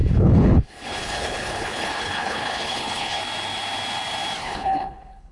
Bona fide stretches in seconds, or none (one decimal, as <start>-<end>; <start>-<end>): 3.2-4.4